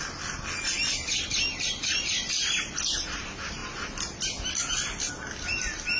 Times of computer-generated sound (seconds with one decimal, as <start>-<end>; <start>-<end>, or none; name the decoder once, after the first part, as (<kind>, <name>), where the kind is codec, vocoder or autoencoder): none